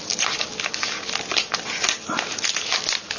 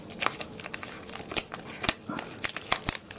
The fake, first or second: second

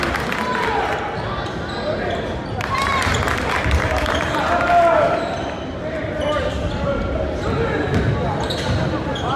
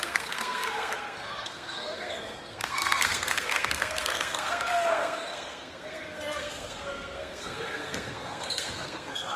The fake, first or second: second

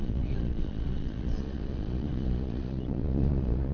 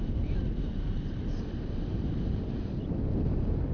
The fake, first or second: first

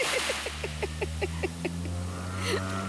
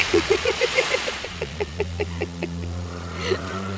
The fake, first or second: second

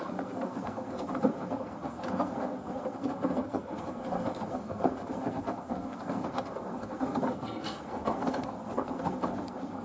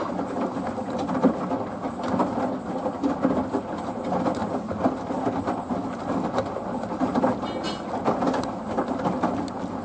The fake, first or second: first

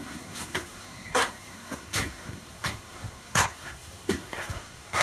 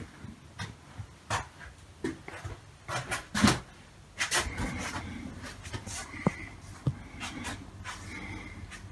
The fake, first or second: first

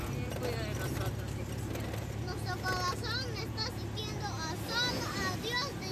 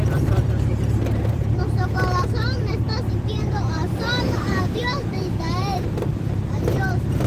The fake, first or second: second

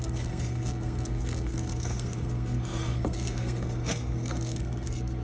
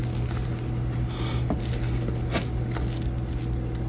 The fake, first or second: first